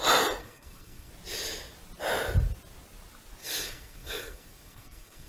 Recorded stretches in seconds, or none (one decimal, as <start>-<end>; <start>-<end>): 0.0-0.4; 1.1-3.4